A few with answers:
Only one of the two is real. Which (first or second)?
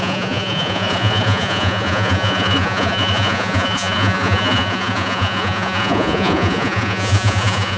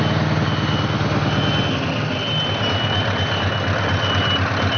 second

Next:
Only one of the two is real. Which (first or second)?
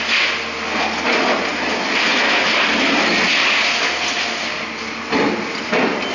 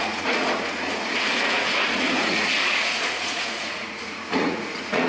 first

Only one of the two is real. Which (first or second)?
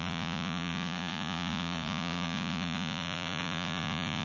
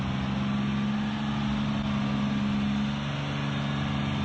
second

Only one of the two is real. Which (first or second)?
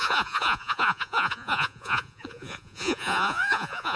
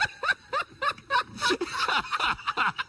second